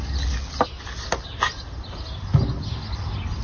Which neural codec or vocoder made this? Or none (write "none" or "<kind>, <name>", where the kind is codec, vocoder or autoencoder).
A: none